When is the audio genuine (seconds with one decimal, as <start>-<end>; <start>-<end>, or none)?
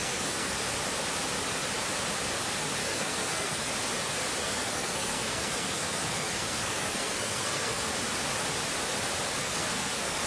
0.6-2.8; 3.7-4.4; 7.8-9.4